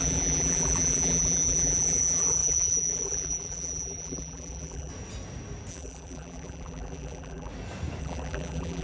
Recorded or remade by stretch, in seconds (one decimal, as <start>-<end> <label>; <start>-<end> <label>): 0.0-4.9 remade; 4.9-5.7 recorded; 5.7-7.5 remade; 7.5-8.0 recorded; 8.0-8.8 remade